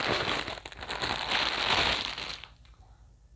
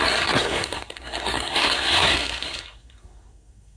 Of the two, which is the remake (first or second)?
second